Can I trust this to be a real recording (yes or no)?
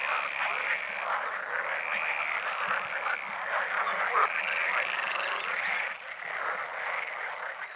yes